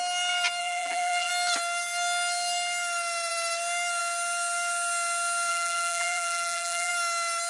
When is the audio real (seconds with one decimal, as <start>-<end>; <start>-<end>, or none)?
0.0-0.6; 1.3-5.5; 6.9-7.5